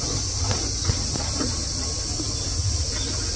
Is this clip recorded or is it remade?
recorded